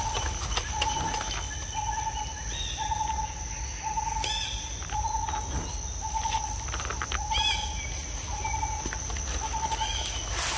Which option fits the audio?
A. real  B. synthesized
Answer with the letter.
A